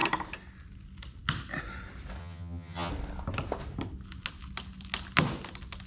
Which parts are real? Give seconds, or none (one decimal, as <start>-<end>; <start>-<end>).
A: 0.0-2.2; 2.9-5.9